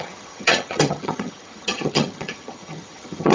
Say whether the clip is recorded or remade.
remade